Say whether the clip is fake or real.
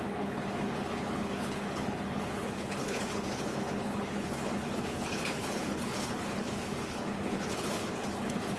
fake